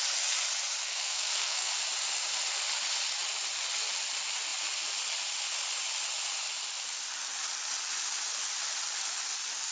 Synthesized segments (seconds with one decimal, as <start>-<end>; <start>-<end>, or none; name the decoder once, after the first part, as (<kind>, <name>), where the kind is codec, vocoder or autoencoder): 0.8-1.7 (codec, SNAC)